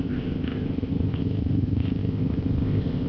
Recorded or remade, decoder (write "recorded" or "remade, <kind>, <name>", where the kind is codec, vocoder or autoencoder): remade, codec, ZipCodec